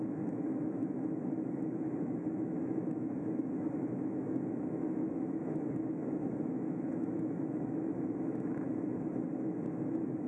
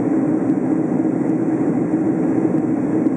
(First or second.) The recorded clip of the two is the second